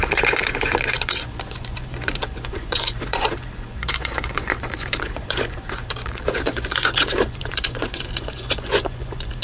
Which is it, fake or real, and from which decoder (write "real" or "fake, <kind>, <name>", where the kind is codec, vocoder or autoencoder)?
fake, vocoder, Vocos